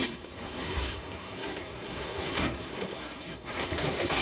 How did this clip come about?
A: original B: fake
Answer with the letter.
B